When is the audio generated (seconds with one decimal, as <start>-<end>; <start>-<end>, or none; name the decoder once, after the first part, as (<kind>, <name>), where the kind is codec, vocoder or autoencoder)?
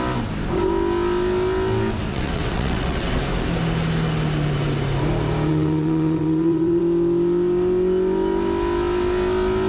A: 2.1-3.2 (vocoder, WaveNeXt); 5.5-6.8